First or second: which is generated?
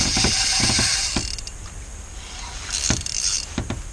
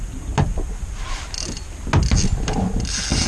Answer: first